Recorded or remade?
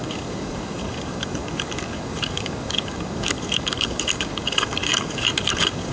remade